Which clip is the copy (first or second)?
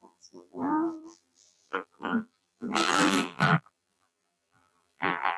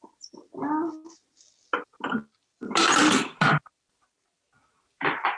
first